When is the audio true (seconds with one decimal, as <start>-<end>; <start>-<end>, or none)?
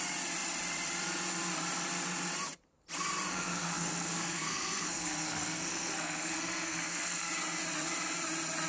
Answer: 0.0-3.3; 7.3-8.7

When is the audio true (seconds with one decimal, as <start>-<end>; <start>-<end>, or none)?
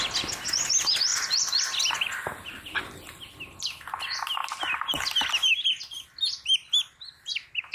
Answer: 0.0-1.1; 1.9-7.7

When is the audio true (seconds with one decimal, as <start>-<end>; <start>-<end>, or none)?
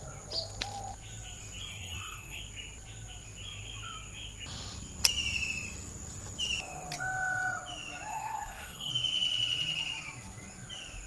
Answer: 0.0-1.7; 2.4-8.1; 8.9-11.1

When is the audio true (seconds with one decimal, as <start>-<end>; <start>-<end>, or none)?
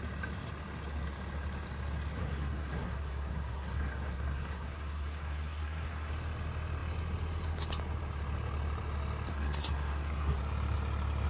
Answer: 0.0-2.2; 6.1-9.3; 10.4-11.3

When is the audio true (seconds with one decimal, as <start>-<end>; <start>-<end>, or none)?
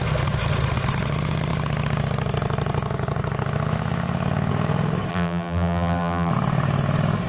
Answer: 0.0-5.1; 6.3-7.3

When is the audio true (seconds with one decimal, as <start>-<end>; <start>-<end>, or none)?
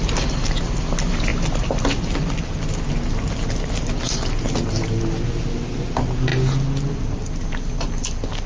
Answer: 0.0-8.5